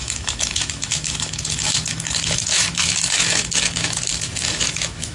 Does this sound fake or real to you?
fake